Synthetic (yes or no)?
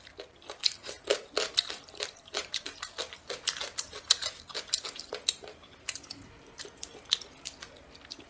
no